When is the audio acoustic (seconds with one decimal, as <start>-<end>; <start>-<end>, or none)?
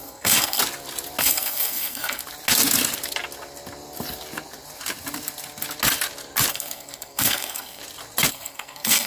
0.6-1.2; 2.2-6.5; 7.8-8.3